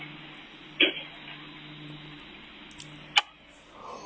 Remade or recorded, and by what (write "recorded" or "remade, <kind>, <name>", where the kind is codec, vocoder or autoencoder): recorded